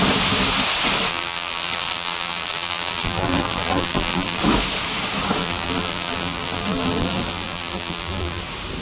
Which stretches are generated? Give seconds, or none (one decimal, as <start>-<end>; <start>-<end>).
1.1-4.4; 5.4-8.4